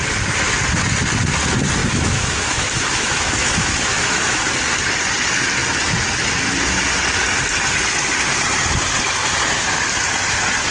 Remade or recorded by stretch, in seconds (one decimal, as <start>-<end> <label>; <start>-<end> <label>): 0.0-1.8 recorded; 1.8-4.5 remade; 4.5-10.7 recorded